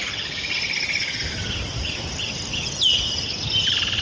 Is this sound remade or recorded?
recorded